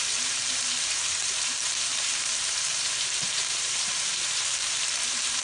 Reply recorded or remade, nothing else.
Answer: remade